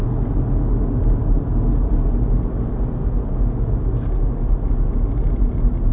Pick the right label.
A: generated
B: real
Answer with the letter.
B